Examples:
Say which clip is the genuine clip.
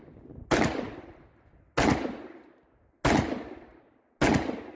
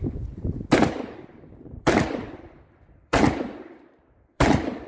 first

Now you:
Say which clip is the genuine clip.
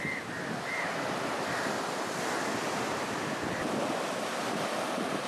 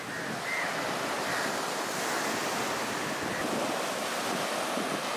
second